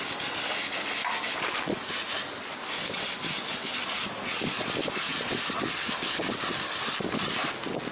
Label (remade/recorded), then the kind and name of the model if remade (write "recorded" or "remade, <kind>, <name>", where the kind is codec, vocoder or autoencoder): recorded